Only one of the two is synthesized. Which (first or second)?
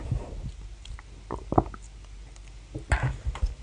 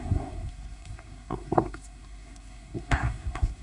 second